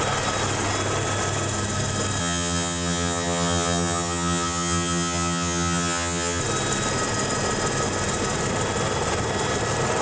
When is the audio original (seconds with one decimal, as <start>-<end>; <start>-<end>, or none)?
0.0-2.2; 6.4-10.0